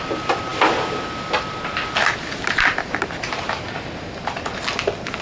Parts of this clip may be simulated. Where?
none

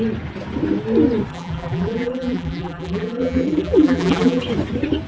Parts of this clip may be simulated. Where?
1.3-4.4 (vocoder, BigVGAN v2)

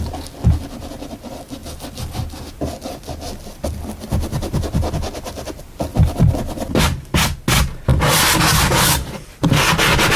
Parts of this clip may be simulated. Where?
none

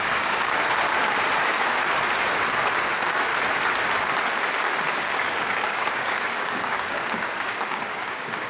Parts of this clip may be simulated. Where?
0.0-0.9 (codec, DAC); 2.9-3.3; 4.6-8.5

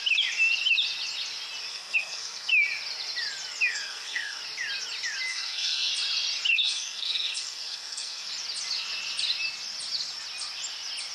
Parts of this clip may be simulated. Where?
1.7-2.5 (codec, SNAC); 3.7-4.4; 5.3-5.9; 6.5-8.3